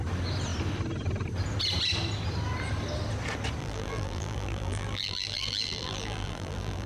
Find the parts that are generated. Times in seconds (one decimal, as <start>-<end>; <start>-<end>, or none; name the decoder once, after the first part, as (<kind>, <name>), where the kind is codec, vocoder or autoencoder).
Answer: 3.6-6.9 (vocoder, BigVGAN v2)